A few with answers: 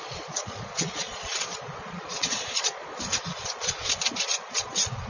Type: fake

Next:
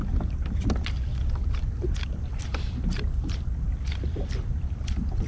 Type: real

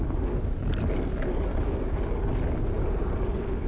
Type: real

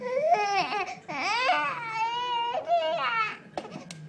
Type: real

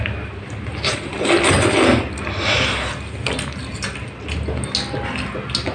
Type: real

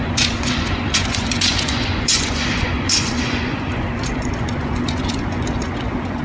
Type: fake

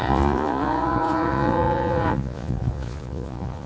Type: fake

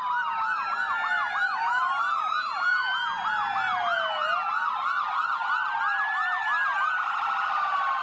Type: real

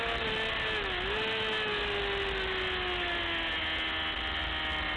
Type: real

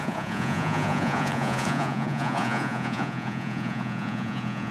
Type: fake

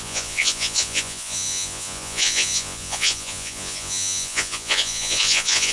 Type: fake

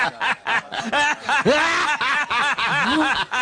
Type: real